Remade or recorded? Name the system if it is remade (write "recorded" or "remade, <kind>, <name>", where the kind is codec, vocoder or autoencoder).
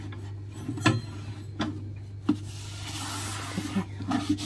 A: recorded